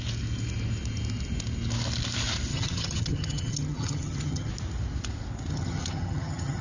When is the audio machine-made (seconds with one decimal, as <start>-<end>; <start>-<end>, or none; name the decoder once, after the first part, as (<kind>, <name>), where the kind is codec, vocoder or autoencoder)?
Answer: 2.5-4.5 (vocoder, HiFi-GAN); 5.5-6.6